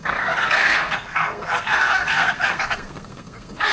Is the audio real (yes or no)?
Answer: no